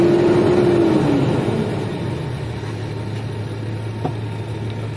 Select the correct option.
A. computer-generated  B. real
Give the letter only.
B